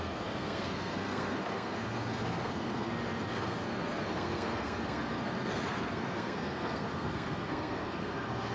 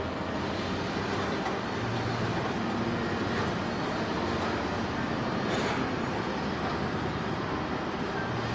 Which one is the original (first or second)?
second